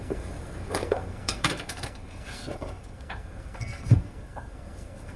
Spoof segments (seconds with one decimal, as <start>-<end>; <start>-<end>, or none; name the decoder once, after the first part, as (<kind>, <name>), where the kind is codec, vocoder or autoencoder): 0.0-5.2 (codec, SNAC)